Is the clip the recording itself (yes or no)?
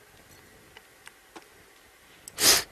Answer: yes